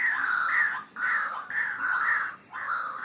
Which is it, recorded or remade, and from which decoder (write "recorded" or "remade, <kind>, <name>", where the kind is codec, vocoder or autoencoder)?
recorded